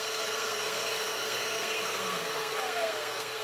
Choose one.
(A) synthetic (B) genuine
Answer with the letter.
A